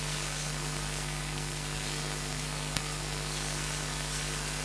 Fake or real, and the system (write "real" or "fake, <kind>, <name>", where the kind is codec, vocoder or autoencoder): fake, codec, SNAC